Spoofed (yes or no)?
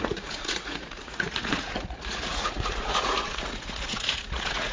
yes